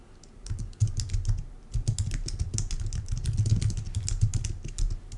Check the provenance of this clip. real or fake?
real